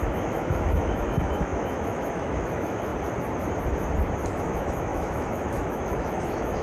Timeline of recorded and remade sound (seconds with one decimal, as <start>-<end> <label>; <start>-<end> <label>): 0.0-2.9 remade; 2.9-4.4 recorded; 4.4-6.6 remade

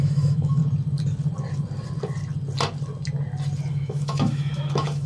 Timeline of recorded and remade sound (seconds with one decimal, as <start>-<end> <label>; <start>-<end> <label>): 0.0-0.6 remade; 0.6-3.7 recorded; 3.7-5.1 remade

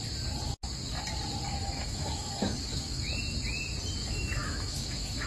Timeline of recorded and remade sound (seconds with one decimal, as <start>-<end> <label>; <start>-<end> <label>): 0.0-1.6 recorded; 1.6-3.1 remade; 3.1-4.0 recorded; 4.0-5.3 remade